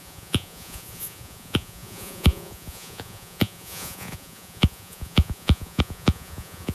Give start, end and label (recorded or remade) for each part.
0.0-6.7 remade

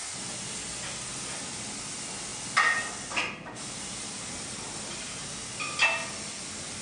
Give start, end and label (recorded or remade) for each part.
0.0-6.8 recorded

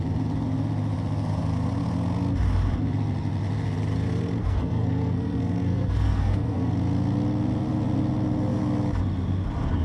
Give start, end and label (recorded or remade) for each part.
0.0-4.4 recorded; 4.4-6.7 remade; 6.7-9.8 recorded

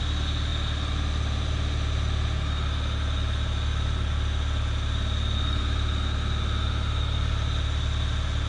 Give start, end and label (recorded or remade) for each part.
0.0-8.5 recorded

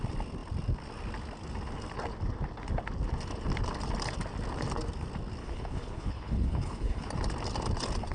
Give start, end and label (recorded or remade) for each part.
0.0-5.4 recorded; 5.4-7.1 remade; 7.1-8.1 recorded

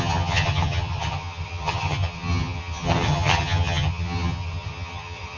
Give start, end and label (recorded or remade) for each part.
0.0-5.4 remade